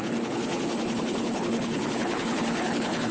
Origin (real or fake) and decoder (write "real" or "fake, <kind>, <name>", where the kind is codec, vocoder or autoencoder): fake, codec, HILCodec